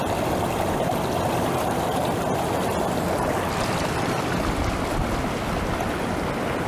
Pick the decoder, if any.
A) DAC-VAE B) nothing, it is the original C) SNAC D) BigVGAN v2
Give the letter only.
B